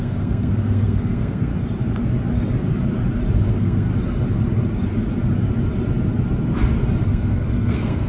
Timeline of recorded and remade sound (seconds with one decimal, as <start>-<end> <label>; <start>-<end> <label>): 0.0-1.5 remade; 1.5-3.5 recorded; 3.5-3.9 remade; 3.9-7.1 recorded; 7.1-8.1 remade